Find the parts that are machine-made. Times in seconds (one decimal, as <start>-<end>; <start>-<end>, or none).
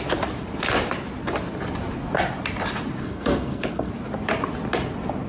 3.0-3.9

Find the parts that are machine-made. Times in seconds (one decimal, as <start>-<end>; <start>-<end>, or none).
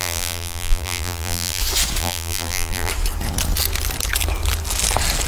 0.0-1.6; 2.0-2.9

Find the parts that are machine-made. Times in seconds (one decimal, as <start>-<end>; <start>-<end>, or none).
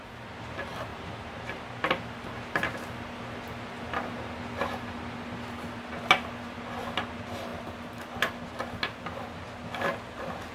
0.9-1.7